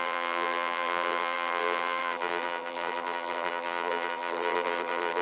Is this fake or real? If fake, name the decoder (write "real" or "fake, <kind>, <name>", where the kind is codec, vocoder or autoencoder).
fake, vocoder, BigVGAN v2